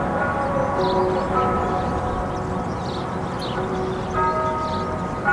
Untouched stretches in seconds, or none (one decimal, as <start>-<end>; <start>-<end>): 0.0-1.0; 2.1-5.3